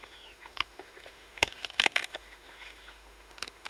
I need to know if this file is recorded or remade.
remade